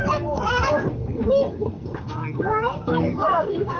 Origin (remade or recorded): remade